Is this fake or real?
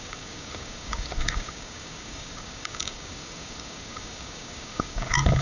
fake